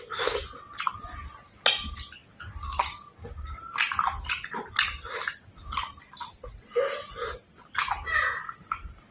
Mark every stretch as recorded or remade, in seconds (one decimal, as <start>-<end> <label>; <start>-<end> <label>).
0.0-9.1 recorded